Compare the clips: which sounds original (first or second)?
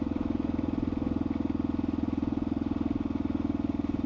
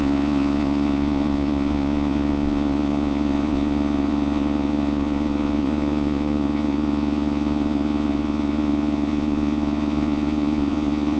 first